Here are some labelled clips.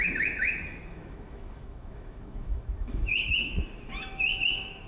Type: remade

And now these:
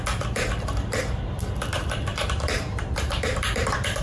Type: remade